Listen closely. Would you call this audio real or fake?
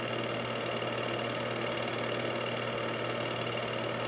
real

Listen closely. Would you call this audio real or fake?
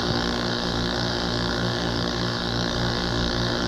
fake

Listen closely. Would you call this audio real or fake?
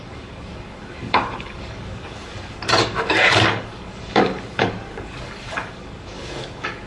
fake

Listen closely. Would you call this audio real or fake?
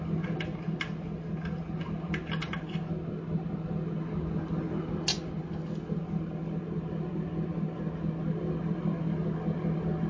real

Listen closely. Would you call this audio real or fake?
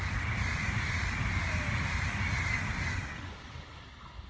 real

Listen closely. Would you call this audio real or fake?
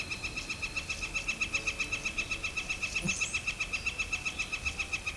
real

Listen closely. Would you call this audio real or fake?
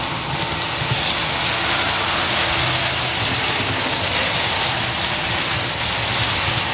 real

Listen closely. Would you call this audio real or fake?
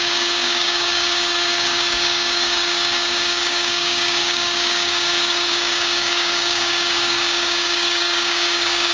fake